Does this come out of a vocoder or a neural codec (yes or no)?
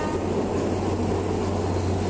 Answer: no